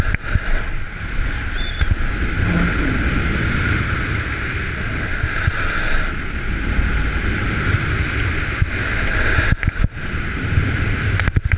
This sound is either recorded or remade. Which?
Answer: recorded